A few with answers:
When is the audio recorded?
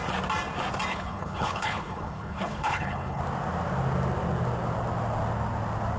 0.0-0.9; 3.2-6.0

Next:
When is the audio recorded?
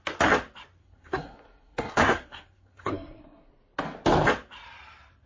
0.0-0.8; 3.5-5.3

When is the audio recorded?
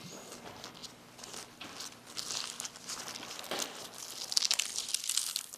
0.0-5.6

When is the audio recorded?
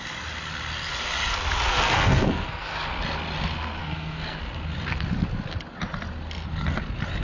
0.0-1.7; 2.9-3.8; 4.4-7.2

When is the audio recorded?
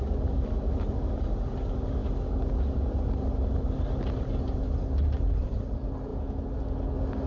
0.0-7.3